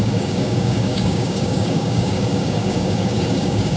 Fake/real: fake